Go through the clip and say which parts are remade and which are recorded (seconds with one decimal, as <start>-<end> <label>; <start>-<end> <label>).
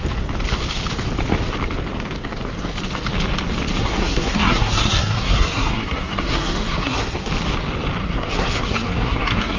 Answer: 0.0-3.8 recorded; 3.8-7.3 remade; 7.3-8.0 recorded; 8.0-9.6 remade